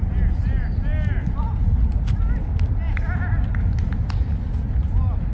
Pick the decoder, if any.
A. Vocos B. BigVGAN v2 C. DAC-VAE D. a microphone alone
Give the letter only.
D